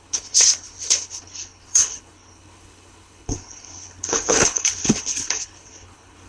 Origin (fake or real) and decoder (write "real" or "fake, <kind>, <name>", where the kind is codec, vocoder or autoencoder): fake, codec, HILCodec